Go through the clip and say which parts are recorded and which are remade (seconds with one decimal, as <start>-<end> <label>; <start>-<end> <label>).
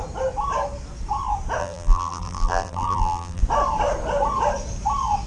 0.0-1.6 recorded; 1.6-3.4 remade; 3.4-5.3 recorded